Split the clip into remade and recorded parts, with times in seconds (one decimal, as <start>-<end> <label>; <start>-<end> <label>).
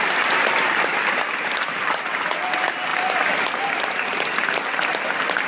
0.0-5.5 recorded